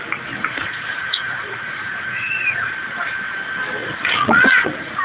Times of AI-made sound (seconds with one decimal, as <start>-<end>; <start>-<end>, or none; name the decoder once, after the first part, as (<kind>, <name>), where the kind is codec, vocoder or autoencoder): 0.4-2.7 (vocoder, Vocos); 3.8-5.0